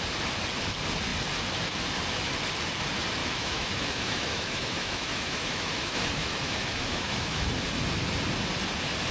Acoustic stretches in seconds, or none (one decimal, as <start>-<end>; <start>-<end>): 0.0-3.2; 7.5-9.1